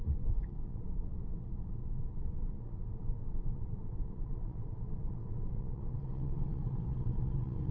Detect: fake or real fake